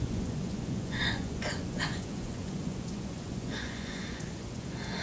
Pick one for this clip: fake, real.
fake